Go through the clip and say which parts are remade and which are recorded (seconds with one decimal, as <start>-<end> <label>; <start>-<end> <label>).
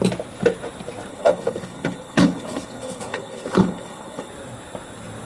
0.0-1.1 recorded; 1.1-4.3 remade; 4.3-5.3 recorded